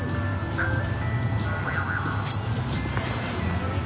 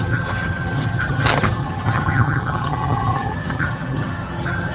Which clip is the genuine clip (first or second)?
first